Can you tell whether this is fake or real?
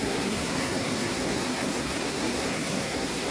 fake